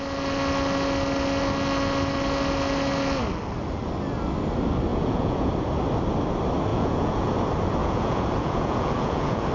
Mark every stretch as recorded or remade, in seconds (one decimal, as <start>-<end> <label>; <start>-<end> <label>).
0.0-4.9 recorded; 4.9-5.5 remade; 5.5-6.7 recorded; 6.7-7.3 remade; 7.3-7.8 recorded; 7.8-9.5 remade